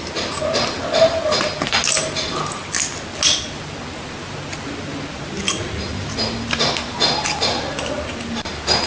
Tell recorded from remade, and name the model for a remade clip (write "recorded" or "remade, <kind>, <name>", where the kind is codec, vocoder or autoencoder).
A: recorded